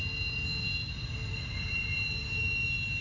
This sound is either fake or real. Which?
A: real